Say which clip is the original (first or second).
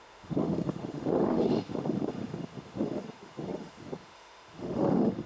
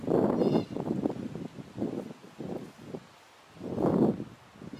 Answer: second